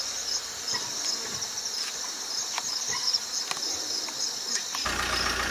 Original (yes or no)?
yes